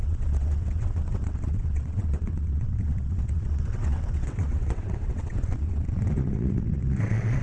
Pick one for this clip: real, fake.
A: fake